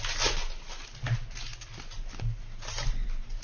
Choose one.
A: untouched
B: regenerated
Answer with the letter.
A